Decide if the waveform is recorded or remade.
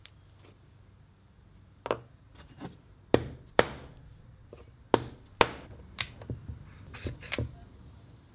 recorded